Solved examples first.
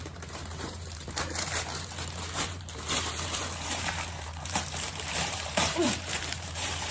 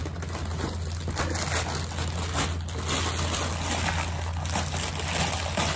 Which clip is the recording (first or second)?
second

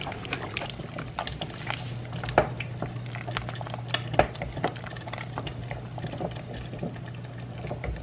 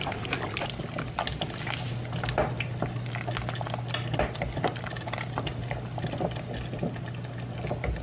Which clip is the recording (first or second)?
second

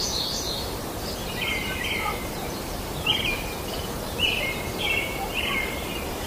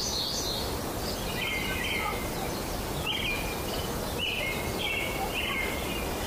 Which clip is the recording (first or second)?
second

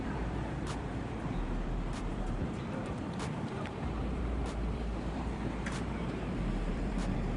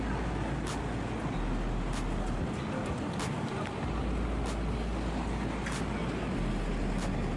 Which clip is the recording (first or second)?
second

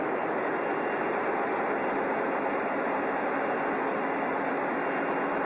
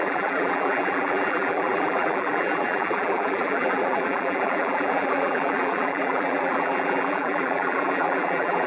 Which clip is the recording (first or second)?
first